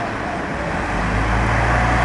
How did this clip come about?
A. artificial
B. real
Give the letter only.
B